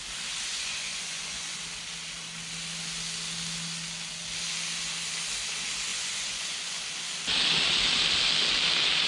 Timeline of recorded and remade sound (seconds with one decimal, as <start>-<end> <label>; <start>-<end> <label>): 0.0-0.5 recorded; 0.5-1.6 remade; 1.6-5.9 recorded; 5.9-6.8 remade; 6.8-9.1 recorded